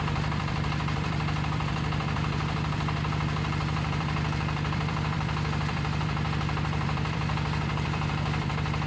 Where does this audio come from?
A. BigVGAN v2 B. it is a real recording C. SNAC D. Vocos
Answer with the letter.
A